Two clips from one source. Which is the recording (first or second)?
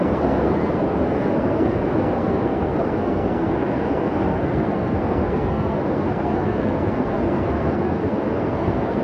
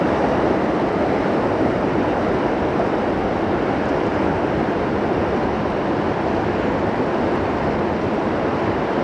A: second